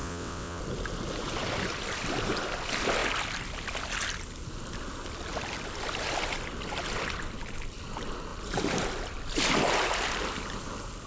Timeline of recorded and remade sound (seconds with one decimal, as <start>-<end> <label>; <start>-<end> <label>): 0.0-0.6 remade; 0.6-11.1 recorded

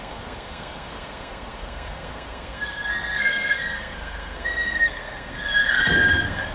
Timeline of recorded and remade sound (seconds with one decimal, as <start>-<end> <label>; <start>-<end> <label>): 0.0-6.5 remade

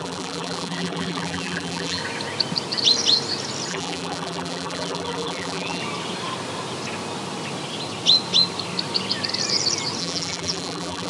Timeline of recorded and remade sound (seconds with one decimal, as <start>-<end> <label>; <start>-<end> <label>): 0.0-2.0 remade; 2.0-3.7 recorded; 3.7-5.8 remade; 5.8-10.0 recorded; 10.0-11.1 remade

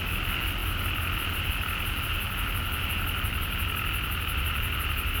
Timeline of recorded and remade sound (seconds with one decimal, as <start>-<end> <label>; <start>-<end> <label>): 0.0-5.2 recorded

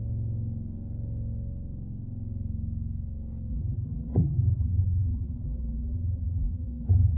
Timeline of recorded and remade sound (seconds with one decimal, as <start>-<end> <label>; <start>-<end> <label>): 0.0-3.5 recorded; 3.5-7.2 remade